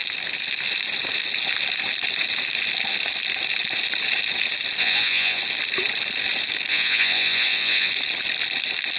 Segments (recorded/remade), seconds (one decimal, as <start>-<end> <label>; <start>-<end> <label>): 0.0-4.8 recorded; 4.8-5.4 remade; 5.4-6.7 recorded; 6.7-7.9 remade; 7.9-9.0 recorded